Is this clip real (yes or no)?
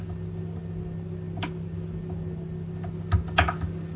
yes